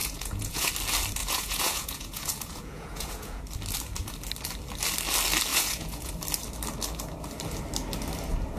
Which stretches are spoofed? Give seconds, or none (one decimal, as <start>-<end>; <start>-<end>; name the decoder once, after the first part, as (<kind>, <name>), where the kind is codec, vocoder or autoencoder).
0.0-0.7 (vocoder, Vocos); 1.2-3.4; 5.5-6.1